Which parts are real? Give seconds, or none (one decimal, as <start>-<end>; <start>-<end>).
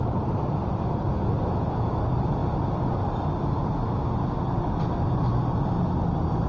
0.0-6.5